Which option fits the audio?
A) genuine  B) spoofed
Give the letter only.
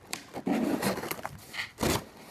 B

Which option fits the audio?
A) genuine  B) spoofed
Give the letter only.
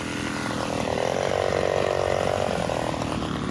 A